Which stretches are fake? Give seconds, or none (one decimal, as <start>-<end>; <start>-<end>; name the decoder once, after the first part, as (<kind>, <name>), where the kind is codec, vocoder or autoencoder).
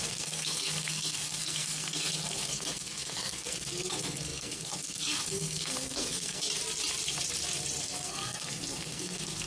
0.0-6.4 (codec, SNAC); 7.8-9.5